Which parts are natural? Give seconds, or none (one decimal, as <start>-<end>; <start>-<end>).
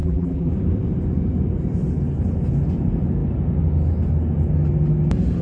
0.5-5.4